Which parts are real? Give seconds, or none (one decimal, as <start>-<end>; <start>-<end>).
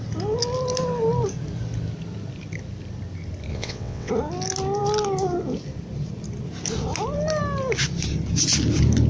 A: 0.0-3.5; 4.1-9.1